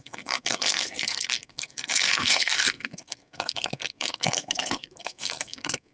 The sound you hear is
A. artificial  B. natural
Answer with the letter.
A